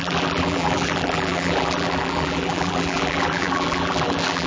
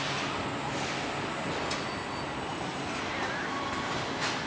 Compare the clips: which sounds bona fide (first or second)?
second